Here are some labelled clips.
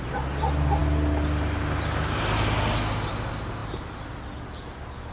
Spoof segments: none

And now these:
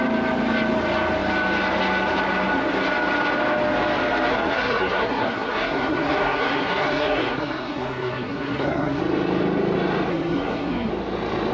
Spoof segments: 4.3-9.0; 10.1-10.9

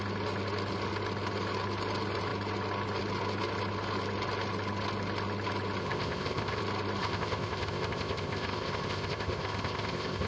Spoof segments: 5.8-6.6; 7.0-10.3

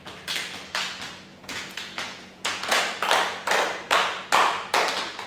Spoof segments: 1.3-2.8

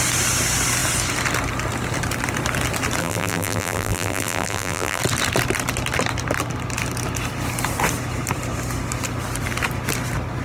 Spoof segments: 3.0-5.0

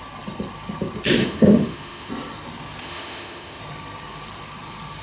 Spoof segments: 1.2-2.1; 2.8-3.6